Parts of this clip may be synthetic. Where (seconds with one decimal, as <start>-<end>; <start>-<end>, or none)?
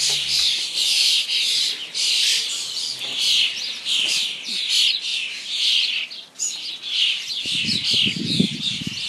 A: none